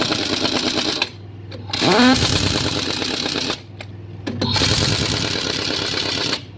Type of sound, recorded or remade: recorded